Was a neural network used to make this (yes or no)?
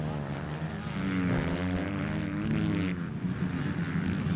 no